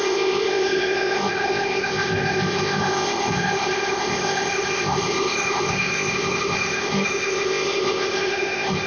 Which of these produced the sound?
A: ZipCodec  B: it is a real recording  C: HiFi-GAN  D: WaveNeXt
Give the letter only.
A